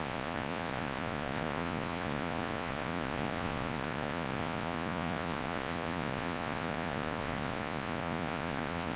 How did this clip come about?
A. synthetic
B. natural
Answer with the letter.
A